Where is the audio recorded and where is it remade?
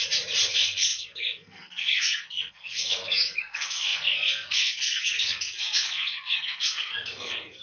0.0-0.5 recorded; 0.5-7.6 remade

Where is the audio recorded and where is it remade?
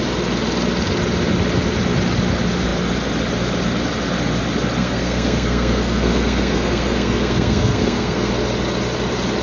0.0-4.8 recorded; 4.8-8.3 remade; 8.3-9.4 recorded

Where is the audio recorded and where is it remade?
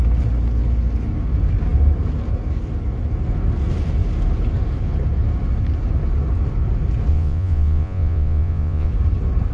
0.0-7.1 recorded; 7.1-8.9 remade; 8.9-9.5 recorded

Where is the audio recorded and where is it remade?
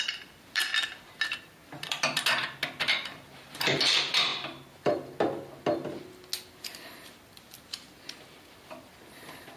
0.0-4.3 remade; 4.3-8.4 recorded; 8.4-9.6 remade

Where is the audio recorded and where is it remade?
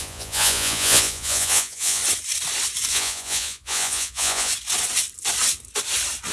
0.0-2.0 remade; 2.0-2.9 recorded; 2.9-4.5 remade; 4.5-6.3 recorded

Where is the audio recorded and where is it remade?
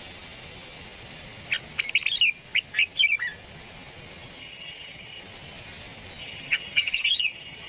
0.0-4.4 recorded; 4.4-5.2 remade; 5.2-6.2 recorded; 6.2-7.7 remade